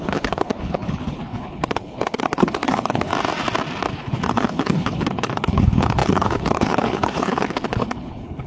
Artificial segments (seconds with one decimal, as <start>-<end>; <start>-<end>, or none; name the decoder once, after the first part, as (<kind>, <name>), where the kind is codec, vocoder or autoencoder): 0.0-3.1 (codec, HILCodec); 3.9-8.5